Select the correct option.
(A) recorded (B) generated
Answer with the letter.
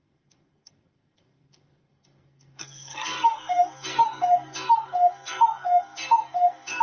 B